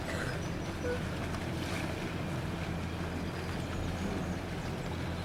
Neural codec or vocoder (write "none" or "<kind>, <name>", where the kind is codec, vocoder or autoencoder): none